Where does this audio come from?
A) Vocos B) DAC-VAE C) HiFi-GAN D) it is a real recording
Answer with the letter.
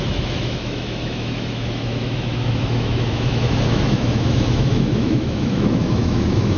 B